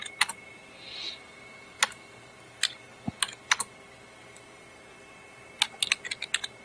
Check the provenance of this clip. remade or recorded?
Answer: recorded